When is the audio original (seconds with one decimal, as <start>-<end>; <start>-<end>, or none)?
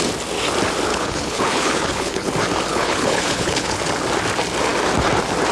0.0-0.9; 2.3-2.7; 3.8-5.5